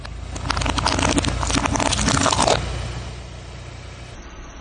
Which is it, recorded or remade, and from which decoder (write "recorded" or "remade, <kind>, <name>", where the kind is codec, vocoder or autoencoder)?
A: recorded